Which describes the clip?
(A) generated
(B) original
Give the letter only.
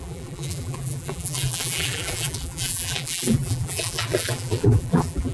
A